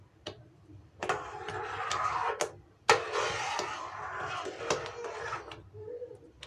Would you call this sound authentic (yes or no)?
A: yes